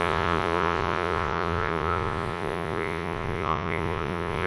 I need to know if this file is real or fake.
fake